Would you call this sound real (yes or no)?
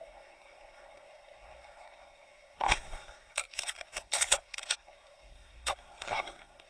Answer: no